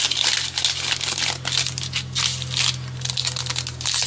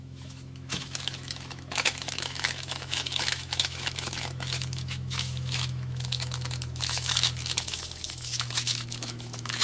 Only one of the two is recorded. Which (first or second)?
first